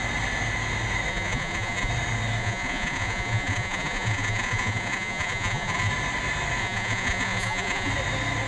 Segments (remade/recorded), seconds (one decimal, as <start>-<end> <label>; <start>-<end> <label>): 0.0-1.1 recorded; 1.1-1.9 remade; 1.9-2.4 recorded; 2.4-5.9 remade; 5.9-6.6 recorded; 6.6-7.9 remade; 7.9-8.5 recorded